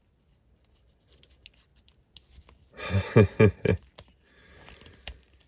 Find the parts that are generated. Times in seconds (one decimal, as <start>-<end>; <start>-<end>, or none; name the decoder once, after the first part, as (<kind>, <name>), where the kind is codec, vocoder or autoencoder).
none